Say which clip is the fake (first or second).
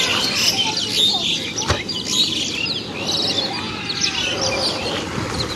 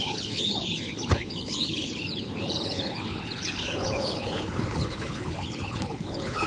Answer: second